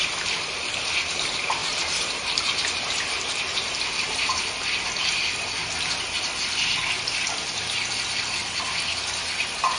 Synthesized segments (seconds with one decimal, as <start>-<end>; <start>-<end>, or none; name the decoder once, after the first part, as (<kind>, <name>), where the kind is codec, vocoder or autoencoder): 1.6-3.8 (vocoder, BigVGAN v2)